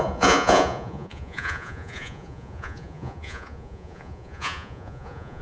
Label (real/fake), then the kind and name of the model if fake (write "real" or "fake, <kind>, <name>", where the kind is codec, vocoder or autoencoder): fake, vocoder, Vocos